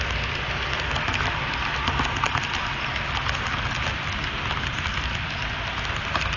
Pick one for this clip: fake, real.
real